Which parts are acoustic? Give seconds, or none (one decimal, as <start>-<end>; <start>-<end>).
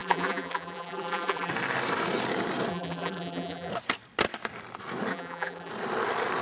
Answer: 1.5-2.7; 3.7-5.1; 5.7-6.4